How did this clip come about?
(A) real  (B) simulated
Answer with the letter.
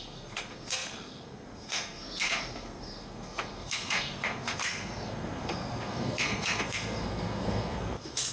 B